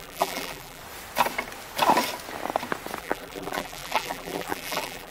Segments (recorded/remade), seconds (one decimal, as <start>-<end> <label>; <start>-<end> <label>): 0.0-0.8 remade; 0.8-3.0 recorded; 3.0-5.1 remade